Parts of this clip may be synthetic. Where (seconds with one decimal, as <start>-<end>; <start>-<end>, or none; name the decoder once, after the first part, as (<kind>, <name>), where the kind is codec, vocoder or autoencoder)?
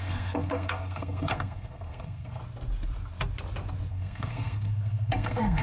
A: 0.0-2.4 (codec, SNAC); 3.9-5.6